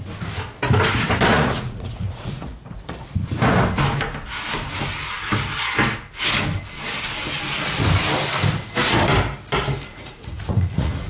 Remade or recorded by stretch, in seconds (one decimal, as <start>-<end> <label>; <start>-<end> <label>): 0.0-1.3 recorded; 1.3-3.3 remade; 3.3-9.9 recorded; 9.9-11.1 remade